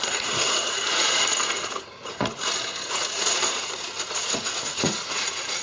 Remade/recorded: remade